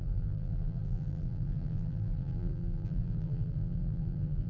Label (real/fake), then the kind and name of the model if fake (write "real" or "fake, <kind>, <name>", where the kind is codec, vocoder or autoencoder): fake, vocoder, BigVGAN v2